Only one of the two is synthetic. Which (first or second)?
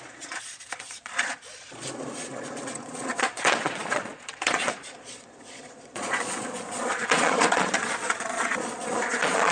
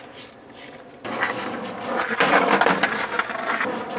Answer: first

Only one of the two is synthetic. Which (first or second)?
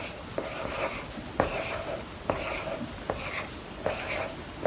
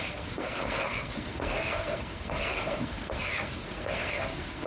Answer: second